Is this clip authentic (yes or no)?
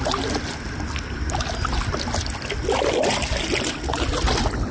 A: yes